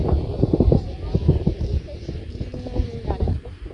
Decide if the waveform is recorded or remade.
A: recorded